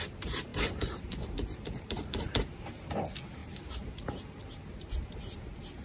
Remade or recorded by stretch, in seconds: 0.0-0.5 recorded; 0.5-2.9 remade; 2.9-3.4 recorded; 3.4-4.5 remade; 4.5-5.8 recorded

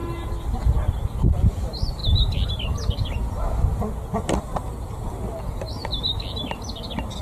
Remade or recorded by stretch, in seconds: 0.0-7.2 recorded

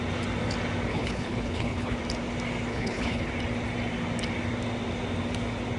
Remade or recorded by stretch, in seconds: 0.0-0.9 recorded; 0.9-2.0 remade; 2.0-2.7 recorded; 2.7-3.3 remade; 3.3-5.8 recorded